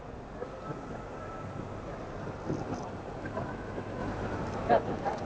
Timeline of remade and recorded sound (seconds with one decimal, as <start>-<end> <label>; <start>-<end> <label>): 0.0-5.2 recorded